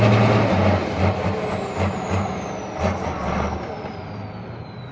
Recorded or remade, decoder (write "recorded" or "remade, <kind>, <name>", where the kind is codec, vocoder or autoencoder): recorded